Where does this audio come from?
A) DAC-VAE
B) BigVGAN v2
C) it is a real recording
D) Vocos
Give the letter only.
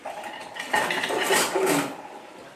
C